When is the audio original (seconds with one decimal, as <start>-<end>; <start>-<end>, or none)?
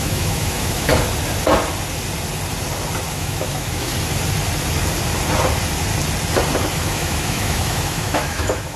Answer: 0.9-3.1; 3.9-6.7